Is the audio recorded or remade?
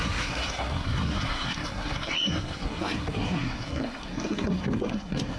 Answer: remade